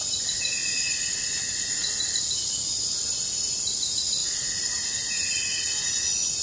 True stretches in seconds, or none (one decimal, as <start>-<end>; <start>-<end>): 0.0-0.6; 2.7-4.2; 5.8-6.4